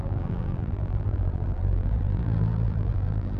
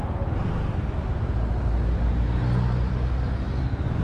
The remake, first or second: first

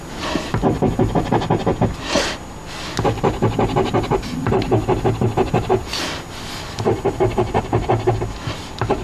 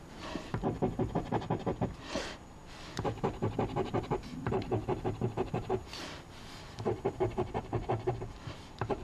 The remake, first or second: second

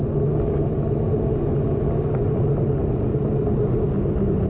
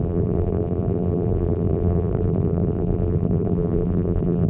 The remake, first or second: second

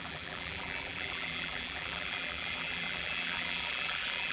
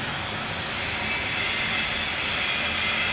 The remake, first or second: first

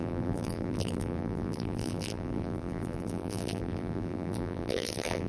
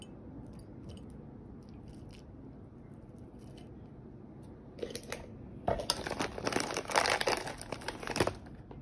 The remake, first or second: first